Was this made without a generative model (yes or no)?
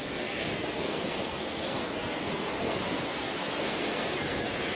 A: no